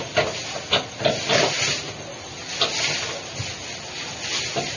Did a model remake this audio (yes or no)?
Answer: no